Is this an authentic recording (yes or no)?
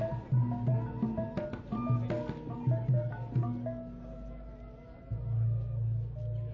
yes